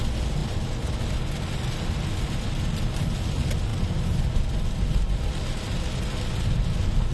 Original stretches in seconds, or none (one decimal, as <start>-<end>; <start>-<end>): 0.0-7.1